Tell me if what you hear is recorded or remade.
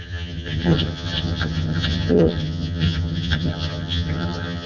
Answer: remade